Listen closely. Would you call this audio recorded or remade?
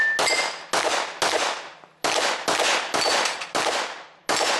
recorded